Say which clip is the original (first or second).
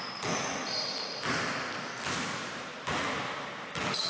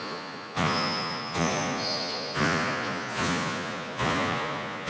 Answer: first